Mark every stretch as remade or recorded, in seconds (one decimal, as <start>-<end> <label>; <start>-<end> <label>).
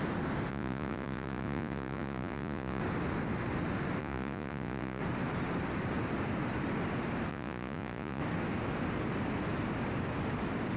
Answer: 0.0-0.5 recorded; 0.5-2.8 remade; 2.8-4.0 recorded; 4.0-5.0 remade; 5.0-7.3 recorded; 7.3-8.2 remade; 8.2-10.8 recorded